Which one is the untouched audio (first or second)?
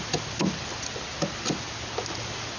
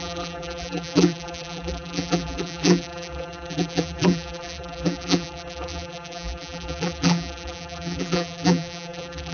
first